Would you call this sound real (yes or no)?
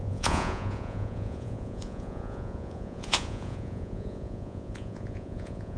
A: no